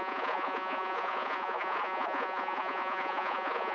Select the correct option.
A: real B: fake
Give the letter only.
B